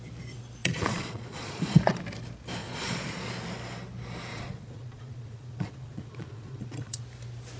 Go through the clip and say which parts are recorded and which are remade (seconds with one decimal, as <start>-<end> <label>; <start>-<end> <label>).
0.0-0.6 recorded; 0.6-2.0 remade; 2.0-2.6 recorded; 2.6-3.3 remade; 3.3-4.3 recorded; 4.3-7.0 remade; 7.0-7.6 recorded